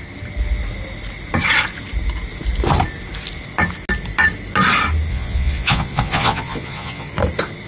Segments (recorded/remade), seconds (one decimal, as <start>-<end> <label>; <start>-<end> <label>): 0.0-5.1 recorded; 5.1-7.1 remade; 7.1-7.7 recorded